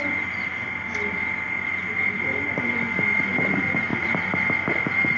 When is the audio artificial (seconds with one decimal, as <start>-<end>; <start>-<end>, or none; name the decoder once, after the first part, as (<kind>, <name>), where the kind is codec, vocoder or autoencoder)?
3.9-4.5 (vocoder, BigVGAN v2)

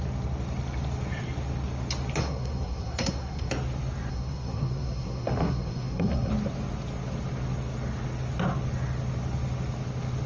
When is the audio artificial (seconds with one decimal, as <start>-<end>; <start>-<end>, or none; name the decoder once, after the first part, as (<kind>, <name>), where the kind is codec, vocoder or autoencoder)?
2.2-3.5 (codec, SNAC); 4.1-6.3

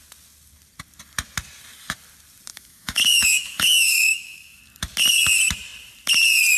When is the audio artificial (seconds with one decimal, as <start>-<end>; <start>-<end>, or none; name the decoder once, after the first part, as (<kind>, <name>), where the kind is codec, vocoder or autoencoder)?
2.5-4.6 (autoencoder, DAC-VAE)

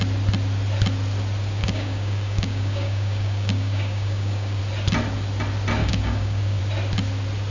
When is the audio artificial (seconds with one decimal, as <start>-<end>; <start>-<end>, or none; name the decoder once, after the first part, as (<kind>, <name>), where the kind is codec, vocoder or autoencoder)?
1.6-4.6 (codec, DAC); 5.8-6.6

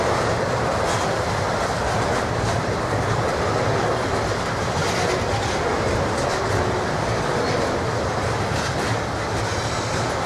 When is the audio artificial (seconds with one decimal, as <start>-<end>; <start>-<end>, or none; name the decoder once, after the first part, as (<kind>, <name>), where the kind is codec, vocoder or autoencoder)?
none